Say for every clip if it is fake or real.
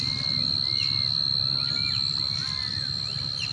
real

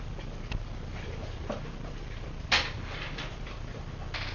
real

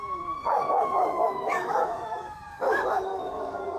fake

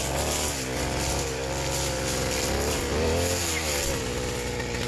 real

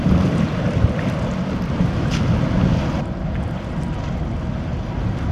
real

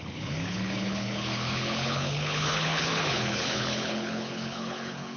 fake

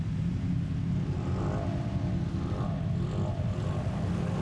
real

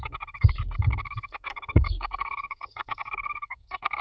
fake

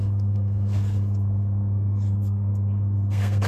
fake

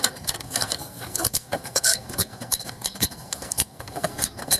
fake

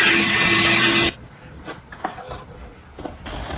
real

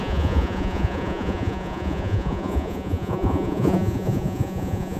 fake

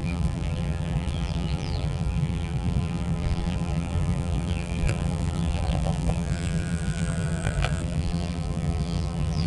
fake